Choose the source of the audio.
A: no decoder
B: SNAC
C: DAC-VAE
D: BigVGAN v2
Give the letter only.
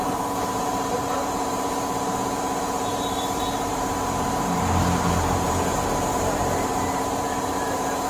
D